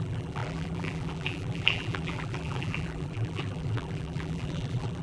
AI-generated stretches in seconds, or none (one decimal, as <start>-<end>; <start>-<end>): 0.0-5.0